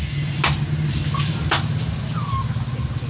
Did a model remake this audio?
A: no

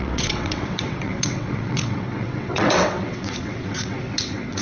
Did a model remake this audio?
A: yes